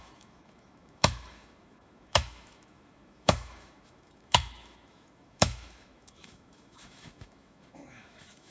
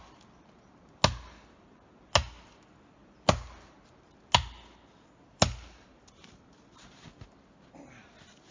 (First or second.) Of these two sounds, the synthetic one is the first